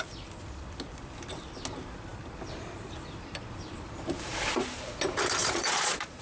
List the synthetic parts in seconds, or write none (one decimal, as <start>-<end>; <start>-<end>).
5.4-6.2